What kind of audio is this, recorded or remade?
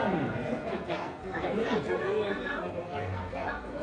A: remade